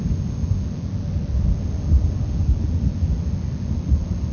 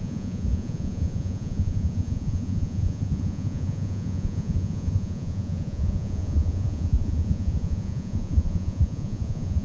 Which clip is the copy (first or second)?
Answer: second